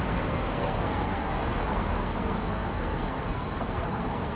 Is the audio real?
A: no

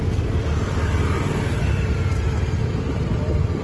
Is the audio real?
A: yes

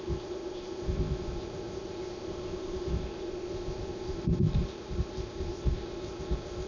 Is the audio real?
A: no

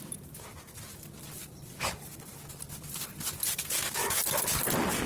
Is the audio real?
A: yes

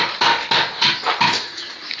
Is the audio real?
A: yes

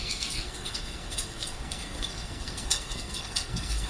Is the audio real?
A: no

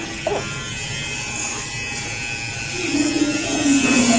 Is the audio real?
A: yes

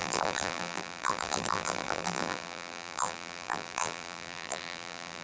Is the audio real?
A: no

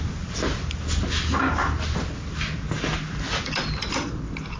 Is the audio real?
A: yes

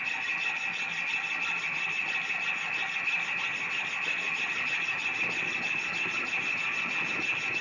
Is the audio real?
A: yes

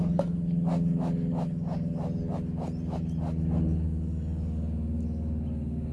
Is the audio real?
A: yes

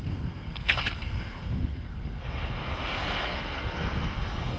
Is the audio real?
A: no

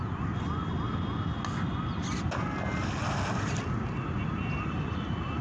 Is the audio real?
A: yes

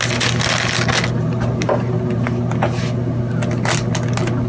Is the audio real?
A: yes